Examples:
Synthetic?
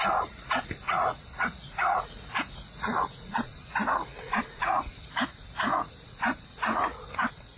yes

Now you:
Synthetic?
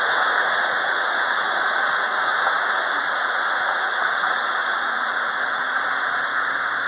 yes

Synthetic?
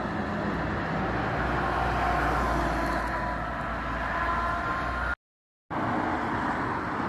no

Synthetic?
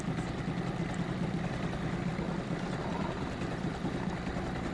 no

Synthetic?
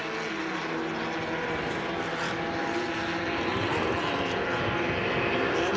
no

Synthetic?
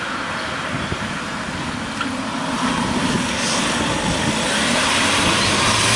no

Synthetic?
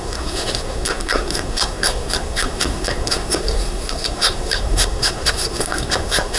yes